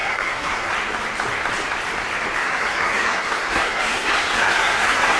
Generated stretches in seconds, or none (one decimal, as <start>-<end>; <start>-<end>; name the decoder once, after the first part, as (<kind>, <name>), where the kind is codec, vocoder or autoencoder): 0.0-0.7 (codec, SNAC); 2.4-5.2